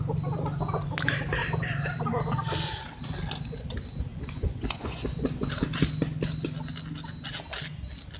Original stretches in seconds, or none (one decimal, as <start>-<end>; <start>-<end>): 0.0-4.1; 5.4-8.2